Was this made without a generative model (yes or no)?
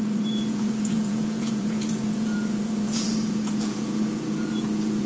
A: no